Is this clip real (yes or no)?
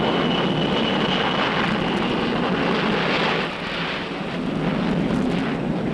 yes